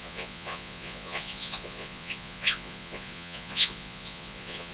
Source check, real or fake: fake